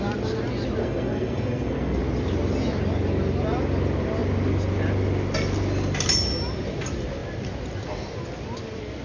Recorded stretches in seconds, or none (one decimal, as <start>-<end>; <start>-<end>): 0.0-0.8; 2.0-9.0